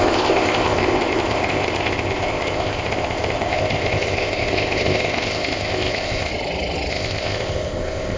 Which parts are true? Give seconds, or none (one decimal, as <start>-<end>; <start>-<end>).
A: 6.3-6.9